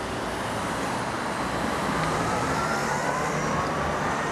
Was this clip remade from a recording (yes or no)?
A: yes